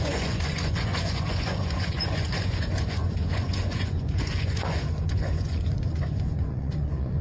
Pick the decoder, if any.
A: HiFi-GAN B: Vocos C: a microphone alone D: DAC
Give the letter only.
B